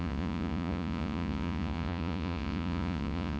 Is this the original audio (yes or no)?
no